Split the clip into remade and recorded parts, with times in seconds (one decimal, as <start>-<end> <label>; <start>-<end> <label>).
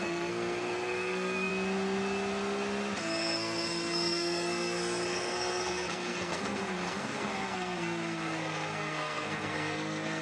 0.0-1.5 remade; 1.5-3.0 recorded; 3.0-10.2 remade